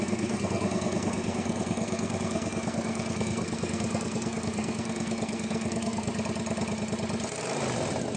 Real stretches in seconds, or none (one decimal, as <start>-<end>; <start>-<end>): 6.1-8.2